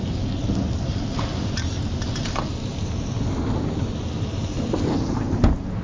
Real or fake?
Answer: real